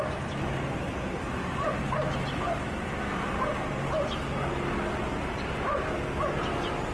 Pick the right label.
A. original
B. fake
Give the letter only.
A